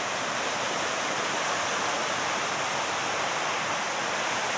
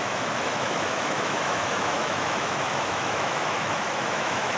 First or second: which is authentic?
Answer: first